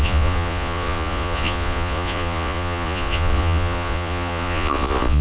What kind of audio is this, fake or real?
fake